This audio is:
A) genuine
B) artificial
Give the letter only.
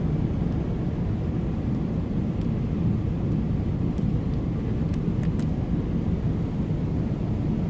A